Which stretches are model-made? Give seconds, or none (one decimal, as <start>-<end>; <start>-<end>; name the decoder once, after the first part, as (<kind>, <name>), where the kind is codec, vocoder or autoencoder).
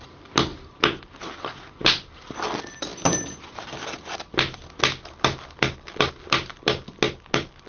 none